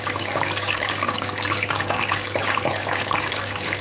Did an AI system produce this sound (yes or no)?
yes